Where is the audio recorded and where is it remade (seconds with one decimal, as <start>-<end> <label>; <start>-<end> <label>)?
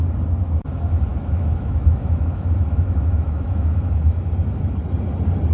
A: 0.0-1.1 recorded; 1.1-4.3 remade; 4.3-5.5 recorded